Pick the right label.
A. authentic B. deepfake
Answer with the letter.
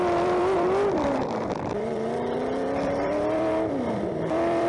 B